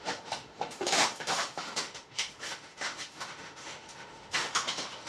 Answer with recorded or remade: remade